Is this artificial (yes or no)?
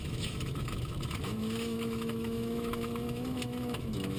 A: yes